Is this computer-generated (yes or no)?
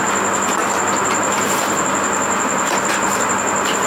no